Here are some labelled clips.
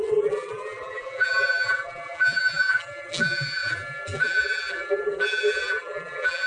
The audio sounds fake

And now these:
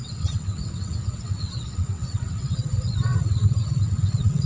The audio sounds fake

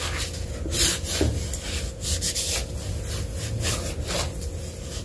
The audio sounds real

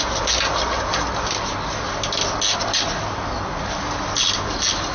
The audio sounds real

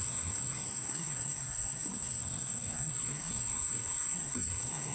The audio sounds fake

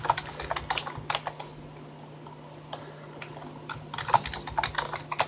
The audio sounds real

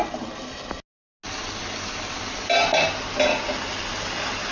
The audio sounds real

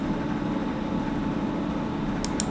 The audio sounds real